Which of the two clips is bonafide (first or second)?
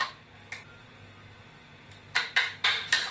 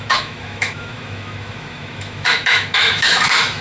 first